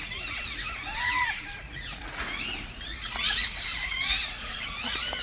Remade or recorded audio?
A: remade